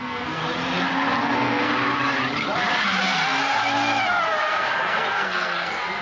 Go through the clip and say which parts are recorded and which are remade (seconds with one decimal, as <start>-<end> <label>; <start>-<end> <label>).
0.0-0.4 remade; 0.4-1.2 recorded; 1.2-1.7 remade; 1.7-4.4 recorded; 4.4-6.0 remade